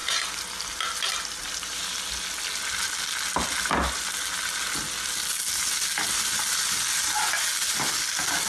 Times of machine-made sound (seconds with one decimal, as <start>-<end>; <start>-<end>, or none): none